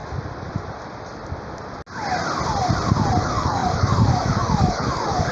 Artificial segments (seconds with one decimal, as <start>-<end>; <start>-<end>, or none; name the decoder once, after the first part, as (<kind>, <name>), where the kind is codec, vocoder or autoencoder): 3.2-5.3 (codec, DAC)